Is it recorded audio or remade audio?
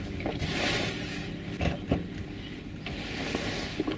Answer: recorded